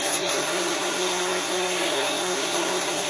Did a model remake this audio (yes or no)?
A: yes